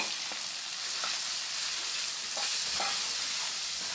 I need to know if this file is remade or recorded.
recorded